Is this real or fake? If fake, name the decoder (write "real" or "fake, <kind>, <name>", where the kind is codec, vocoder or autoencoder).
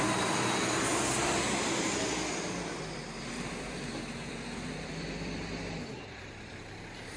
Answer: fake, vocoder, BigVGAN v2